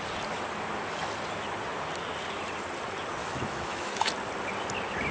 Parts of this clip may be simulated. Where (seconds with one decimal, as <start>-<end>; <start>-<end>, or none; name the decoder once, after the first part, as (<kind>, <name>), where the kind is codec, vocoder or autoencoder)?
3.2-4.1 (autoencoder, DAC-VAE)